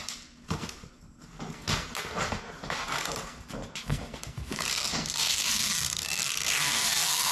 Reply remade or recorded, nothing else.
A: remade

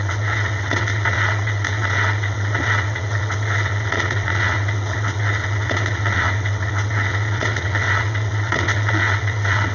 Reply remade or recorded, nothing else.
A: remade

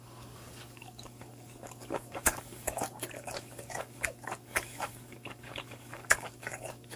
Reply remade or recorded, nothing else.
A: remade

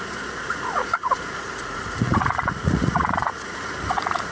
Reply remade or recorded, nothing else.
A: remade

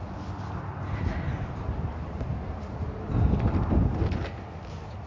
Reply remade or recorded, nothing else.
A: recorded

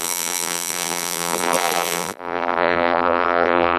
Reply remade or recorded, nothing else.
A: remade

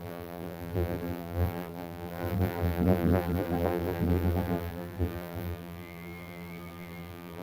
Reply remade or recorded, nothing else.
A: remade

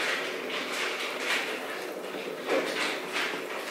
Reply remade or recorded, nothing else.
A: recorded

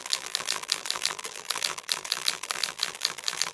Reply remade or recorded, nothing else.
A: remade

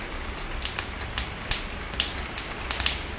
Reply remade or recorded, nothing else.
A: recorded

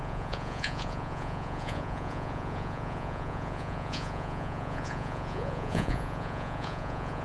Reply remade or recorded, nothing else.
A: remade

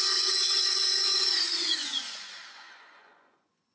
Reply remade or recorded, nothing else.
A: remade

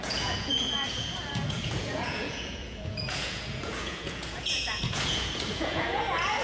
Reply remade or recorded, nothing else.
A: remade